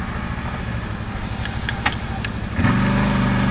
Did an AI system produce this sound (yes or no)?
no